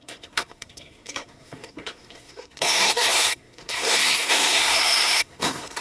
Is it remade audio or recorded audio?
remade